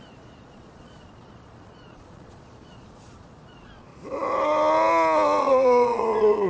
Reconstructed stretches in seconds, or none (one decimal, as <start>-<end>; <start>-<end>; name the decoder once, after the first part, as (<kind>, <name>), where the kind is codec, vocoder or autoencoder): 0.0-3.9 (vocoder, Vocos); 5.4-6.5